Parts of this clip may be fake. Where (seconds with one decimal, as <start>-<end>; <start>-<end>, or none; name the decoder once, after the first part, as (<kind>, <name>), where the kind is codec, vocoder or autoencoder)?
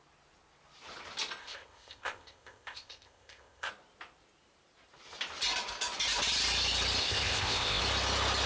1.4-3.7 (codec, ZipCodec); 7.0-7.8